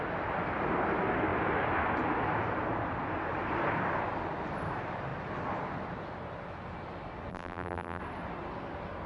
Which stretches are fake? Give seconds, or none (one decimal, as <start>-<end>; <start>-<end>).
7.3-8.0